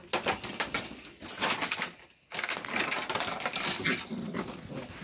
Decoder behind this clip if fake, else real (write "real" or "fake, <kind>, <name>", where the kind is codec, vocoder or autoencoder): real